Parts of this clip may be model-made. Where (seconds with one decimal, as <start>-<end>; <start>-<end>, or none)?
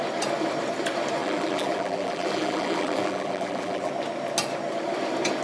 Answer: 1.2-3.9